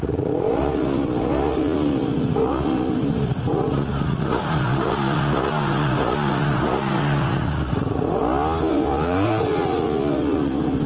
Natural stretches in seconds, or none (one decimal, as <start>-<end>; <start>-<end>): 8.2-8.7